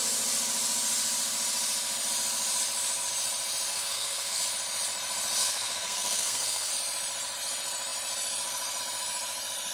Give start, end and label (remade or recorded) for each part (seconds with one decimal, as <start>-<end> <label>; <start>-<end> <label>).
0.0-3.7 recorded; 3.7-4.4 remade; 4.4-5.4 recorded; 5.4-6.7 remade; 6.7-9.7 recorded